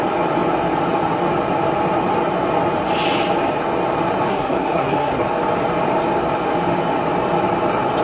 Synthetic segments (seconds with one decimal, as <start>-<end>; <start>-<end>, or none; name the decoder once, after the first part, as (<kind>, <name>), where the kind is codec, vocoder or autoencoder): 4.3-5.2 (codec, SNAC)